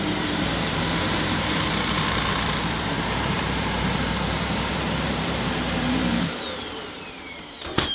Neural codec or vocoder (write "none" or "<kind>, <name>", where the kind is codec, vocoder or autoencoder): vocoder, BigVGAN v2